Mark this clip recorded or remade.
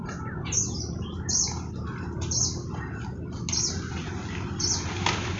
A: recorded